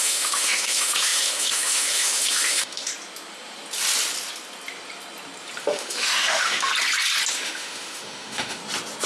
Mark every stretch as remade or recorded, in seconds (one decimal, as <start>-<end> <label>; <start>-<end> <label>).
0.0-2.9 remade; 2.9-5.6 recorded; 5.6-6.7 remade; 6.7-7.3 recorded; 7.3-8.6 remade; 8.6-9.1 recorded